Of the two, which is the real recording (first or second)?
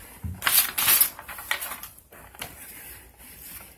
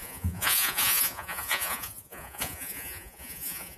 first